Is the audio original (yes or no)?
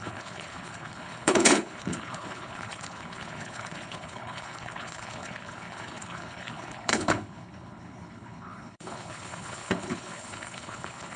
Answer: no